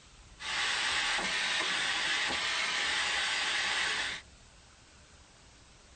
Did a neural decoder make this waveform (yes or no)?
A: yes